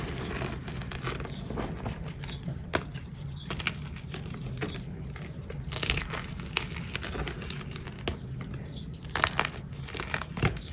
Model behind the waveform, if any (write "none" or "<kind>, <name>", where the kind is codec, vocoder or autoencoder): none